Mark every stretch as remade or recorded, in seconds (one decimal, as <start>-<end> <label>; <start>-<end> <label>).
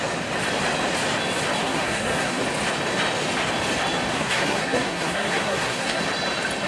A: 0.0-1.6 recorded; 1.6-2.4 remade; 2.4-4.1 recorded; 4.1-6.0 remade; 6.0-6.7 recorded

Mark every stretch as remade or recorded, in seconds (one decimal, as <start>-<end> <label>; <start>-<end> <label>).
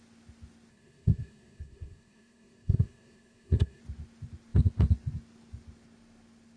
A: 0.0-0.7 recorded; 0.7-3.8 remade; 3.8-6.6 recorded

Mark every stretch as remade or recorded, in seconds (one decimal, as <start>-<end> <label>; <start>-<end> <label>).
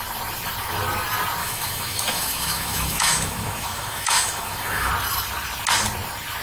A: 0.0-1.4 recorded; 1.4-4.9 remade; 4.9-6.4 recorded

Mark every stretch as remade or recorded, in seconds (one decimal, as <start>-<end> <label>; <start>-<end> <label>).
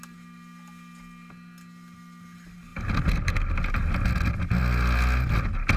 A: 0.0-5.8 recorded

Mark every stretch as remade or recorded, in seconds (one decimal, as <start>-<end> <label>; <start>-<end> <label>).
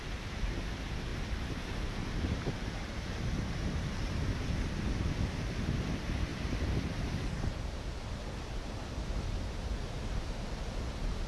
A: 0.0-1.1 recorded; 1.1-4.1 remade; 4.1-6.3 recorded; 6.3-7.1 remade; 7.1-11.3 recorded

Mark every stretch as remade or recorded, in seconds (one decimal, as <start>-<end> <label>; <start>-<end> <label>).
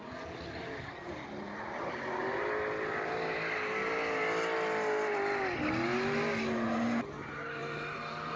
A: 0.0-8.4 recorded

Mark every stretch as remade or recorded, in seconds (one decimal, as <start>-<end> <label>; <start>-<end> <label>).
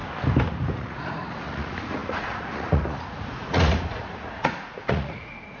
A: 0.0-0.7 recorded; 0.7-5.6 remade